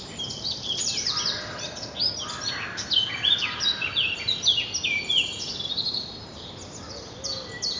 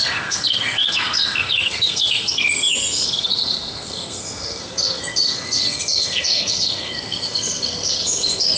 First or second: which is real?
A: first